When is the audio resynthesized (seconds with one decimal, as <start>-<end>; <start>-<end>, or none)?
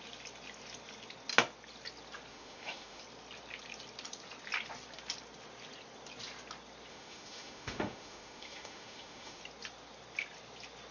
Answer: 2.3-3.0; 6.9-9.4